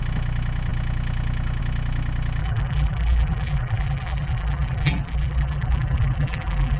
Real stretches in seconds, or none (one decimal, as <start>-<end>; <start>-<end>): 0.0-2.4